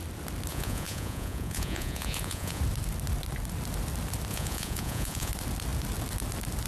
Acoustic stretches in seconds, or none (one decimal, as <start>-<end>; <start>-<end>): 0.0-0.5; 2.6-4.3; 5.3-6.7